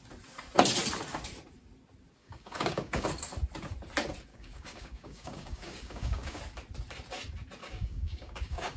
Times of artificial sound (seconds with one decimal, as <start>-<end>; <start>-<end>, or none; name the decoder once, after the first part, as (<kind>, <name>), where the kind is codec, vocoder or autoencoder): 2.2-3.1 (codec, DAC); 4.3-6.4; 7.6-8.8